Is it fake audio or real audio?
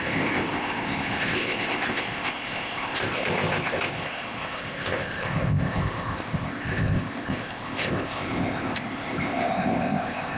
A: fake